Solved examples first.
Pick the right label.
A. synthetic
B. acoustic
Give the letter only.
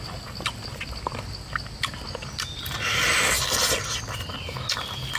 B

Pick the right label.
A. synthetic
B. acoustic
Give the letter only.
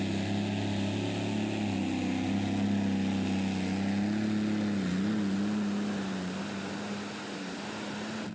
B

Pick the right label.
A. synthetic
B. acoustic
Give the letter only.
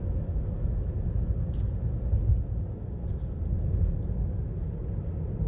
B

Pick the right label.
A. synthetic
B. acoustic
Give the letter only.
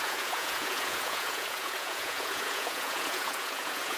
A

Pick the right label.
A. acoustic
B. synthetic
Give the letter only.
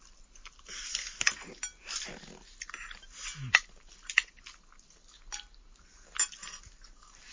A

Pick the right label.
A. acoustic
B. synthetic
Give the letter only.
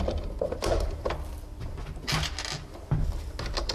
A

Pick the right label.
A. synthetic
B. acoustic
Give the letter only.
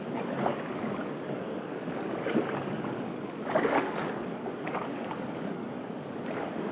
A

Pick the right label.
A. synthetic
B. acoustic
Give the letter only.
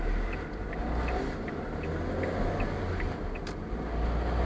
B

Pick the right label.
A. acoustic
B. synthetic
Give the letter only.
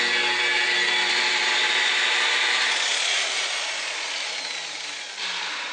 A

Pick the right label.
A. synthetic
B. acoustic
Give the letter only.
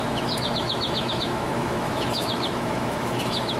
A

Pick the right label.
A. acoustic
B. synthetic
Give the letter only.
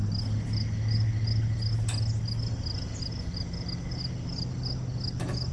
A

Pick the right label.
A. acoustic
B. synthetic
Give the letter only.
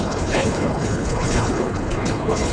B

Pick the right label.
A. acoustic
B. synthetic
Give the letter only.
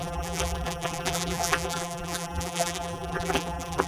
B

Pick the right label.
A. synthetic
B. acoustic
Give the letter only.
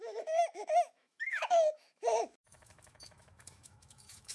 A